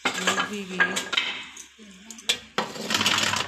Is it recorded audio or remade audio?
recorded